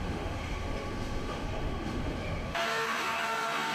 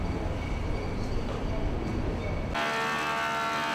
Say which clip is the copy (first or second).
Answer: first